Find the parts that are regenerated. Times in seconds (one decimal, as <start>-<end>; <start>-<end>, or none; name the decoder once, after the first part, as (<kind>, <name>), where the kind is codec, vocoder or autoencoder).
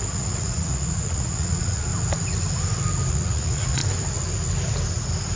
0.0-1.9 (vocoder, Vocos); 3.1-3.8